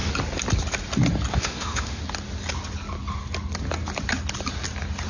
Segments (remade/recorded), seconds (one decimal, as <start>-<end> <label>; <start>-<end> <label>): 0.0-1.3 recorded; 1.3-2.0 remade; 2.0-5.1 recorded